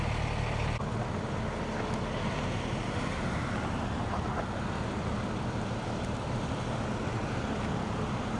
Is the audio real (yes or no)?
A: yes